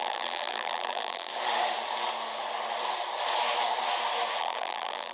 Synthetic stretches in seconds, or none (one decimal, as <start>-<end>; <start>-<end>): 0.0-1.3; 4.4-5.1